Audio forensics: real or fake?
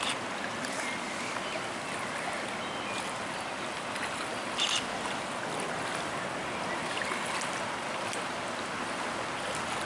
real